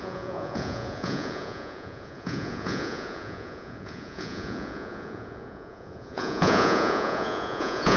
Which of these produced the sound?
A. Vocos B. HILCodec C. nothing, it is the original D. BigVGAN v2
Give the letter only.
A